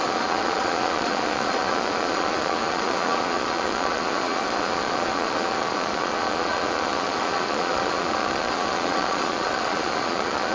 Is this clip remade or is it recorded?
remade